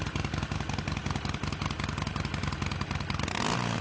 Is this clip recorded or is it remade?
recorded